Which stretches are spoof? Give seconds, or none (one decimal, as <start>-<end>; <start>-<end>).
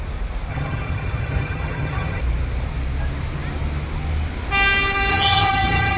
0.5-2.2; 5.1-6.0